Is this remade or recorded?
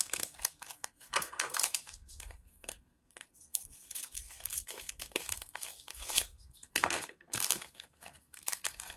remade